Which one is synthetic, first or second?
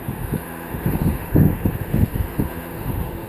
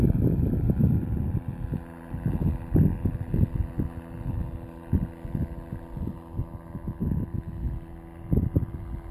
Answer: first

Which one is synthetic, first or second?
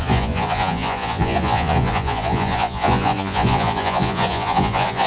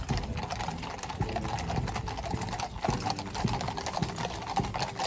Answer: first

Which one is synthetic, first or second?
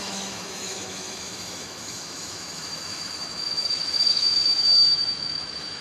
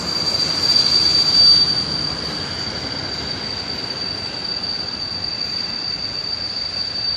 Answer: first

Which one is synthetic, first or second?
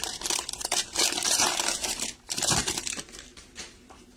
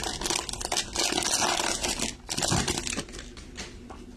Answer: first